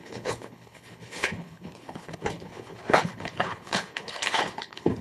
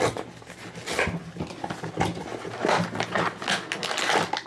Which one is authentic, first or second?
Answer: second